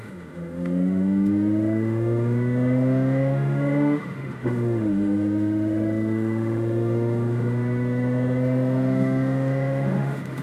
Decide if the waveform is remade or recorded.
remade